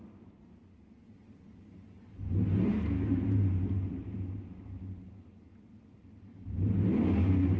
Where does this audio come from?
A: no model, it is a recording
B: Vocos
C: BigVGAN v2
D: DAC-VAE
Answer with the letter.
A